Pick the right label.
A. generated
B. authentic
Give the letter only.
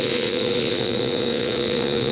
A